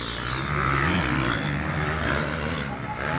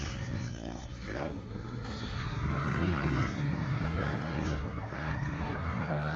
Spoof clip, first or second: second